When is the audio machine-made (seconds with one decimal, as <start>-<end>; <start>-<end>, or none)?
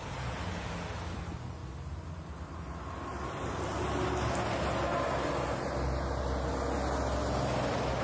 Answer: none